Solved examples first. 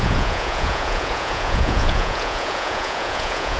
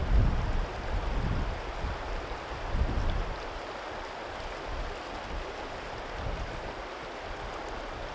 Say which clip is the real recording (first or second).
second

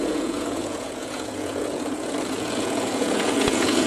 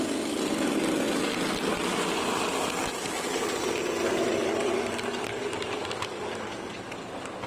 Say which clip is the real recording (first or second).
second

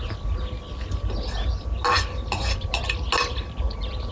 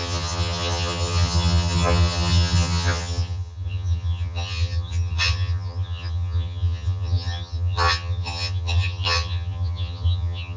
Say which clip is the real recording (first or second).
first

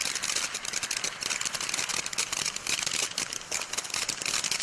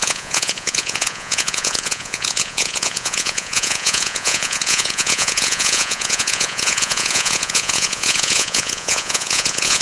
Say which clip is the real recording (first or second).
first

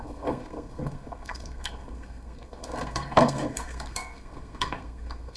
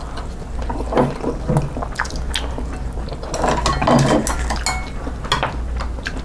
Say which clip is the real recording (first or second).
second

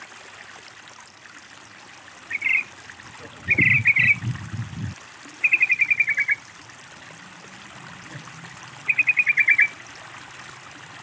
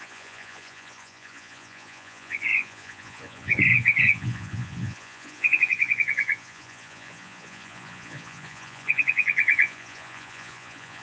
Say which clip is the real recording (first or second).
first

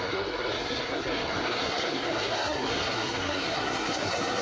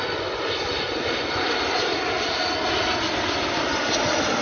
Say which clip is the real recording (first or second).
second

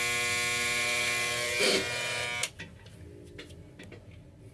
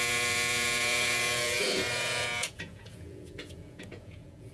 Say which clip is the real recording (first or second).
first